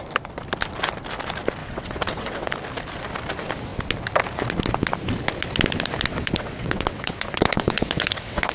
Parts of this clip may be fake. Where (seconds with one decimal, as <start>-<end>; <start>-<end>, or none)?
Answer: 1.6-2.5; 6.1-8.5